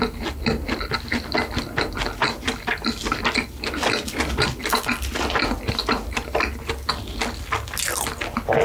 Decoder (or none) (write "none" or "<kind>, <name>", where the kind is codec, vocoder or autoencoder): none